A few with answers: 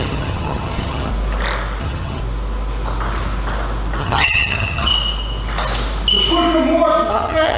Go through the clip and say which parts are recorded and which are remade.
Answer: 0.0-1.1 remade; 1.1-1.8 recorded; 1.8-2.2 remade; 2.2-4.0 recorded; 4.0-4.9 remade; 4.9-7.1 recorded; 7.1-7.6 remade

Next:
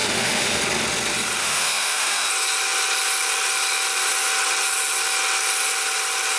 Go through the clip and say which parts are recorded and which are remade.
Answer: 0.0-0.6 remade; 0.6-1.4 recorded; 1.4-2.3 remade; 2.3-6.4 recorded

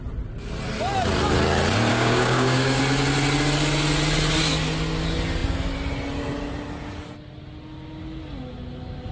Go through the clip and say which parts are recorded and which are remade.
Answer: 0.0-1.9 recorded; 1.9-2.8 remade; 2.8-9.1 recorded

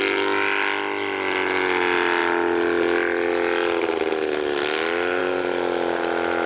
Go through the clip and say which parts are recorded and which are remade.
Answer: 0.0-6.5 recorded

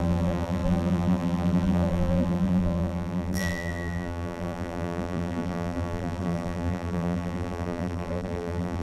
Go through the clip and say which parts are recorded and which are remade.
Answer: 0.0-8.8 remade

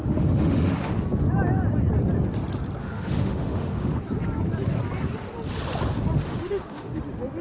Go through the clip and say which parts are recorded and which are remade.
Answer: 0.0-0.9 remade; 0.9-2.8 recorded; 2.8-4.0 remade; 4.0-6.2 recorded; 6.2-7.0 remade; 7.0-7.4 recorded

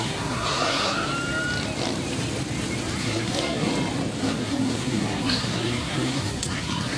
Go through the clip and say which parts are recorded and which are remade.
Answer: 0.0-1.1 remade; 1.1-3.0 recorded; 3.0-3.7 remade; 3.7-4.2 recorded; 4.2-7.0 remade